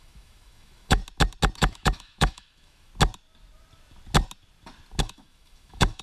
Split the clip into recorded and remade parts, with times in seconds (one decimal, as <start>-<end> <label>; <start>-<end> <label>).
0.0-1.0 remade; 1.0-1.6 recorded; 1.6-2.9 remade; 2.9-5.0 recorded; 5.0-6.0 remade